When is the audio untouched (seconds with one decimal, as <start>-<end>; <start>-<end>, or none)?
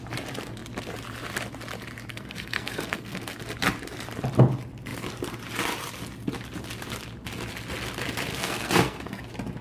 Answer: 0.0-2.1; 3.4-8.3; 9.2-9.6